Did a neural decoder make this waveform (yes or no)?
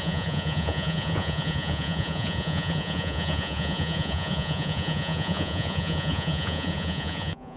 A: yes